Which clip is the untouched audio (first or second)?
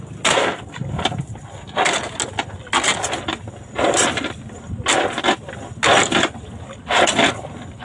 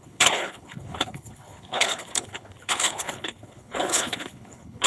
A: first